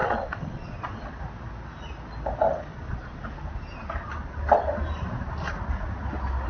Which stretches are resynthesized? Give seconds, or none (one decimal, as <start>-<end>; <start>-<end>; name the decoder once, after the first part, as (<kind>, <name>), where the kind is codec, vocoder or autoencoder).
0.0-1.1 (vocoder, Vocos); 2.7-3.2

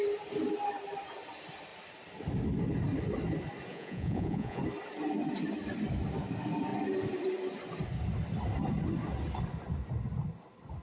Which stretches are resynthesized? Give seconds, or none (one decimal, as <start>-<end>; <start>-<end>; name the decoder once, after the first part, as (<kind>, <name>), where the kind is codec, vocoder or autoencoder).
3.7-4.6 (vocoder, Vocos)

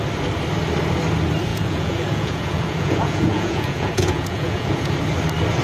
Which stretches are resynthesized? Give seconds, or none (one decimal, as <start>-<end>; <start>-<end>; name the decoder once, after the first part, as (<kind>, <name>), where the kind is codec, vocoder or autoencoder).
1.5-4.9 (vocoder, Vocos)

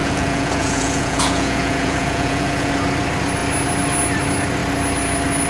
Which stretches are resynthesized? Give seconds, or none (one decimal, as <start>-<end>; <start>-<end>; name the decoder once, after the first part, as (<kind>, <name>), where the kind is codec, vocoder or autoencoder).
0.0-2.7 (vocoder, Vocos)

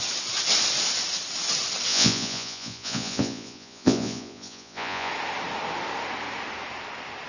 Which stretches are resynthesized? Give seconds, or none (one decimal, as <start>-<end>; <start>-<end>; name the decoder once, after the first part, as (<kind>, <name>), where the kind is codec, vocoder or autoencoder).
1.9-5.1 (vocoder, Vocos)

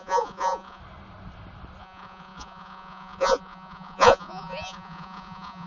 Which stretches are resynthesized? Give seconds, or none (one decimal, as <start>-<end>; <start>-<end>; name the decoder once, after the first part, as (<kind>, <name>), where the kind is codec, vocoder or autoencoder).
0.0-0.8 (vocoder, Vocos); 1.8-5.7

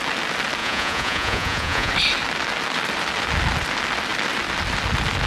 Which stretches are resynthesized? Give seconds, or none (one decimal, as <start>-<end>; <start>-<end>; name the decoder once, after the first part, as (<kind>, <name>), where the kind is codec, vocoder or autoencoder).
0.6-1.9 (vocoder, Vocos)